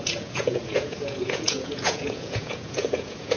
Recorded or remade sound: remade